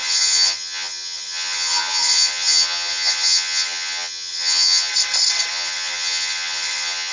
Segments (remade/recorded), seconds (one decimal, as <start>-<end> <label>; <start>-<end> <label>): 0.0-4.9 remade; 4.9-5.5 recorded; 5.5-7.1 remade